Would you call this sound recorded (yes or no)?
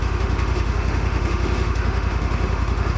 no